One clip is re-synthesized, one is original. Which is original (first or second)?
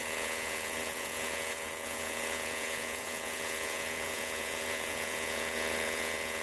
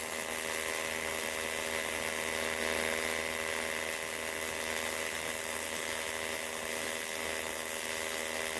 second